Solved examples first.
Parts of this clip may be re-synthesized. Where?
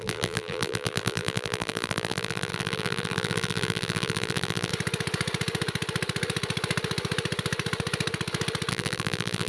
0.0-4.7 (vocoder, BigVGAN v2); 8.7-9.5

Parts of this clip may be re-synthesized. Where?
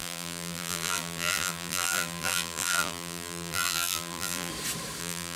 0.0-4.5 (vocoder, BigVGAN v2); 5.0-5.4